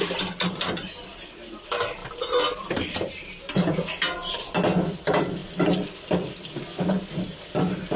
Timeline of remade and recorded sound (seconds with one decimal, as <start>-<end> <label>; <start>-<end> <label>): 0.0-2.0 recorded; 2.0-2.7 remade; 2.7-8.0 recorded